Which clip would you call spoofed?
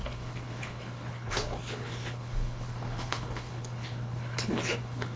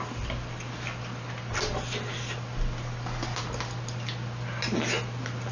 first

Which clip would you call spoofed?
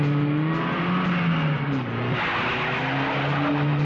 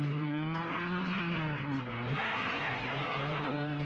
second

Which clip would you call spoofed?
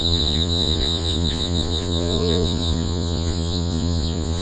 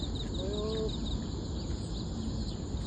first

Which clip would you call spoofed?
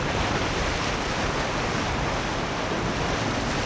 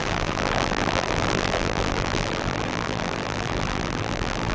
second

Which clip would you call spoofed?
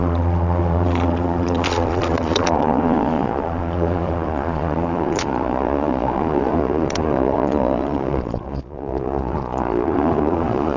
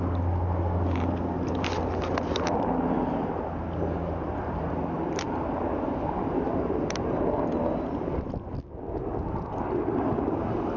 first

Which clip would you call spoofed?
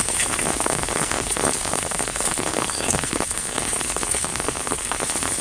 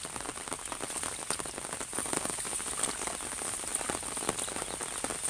first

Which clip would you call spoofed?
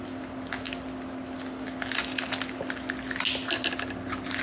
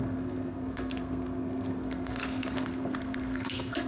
second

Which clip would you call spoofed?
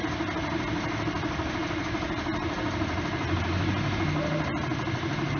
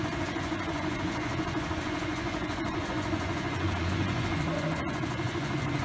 second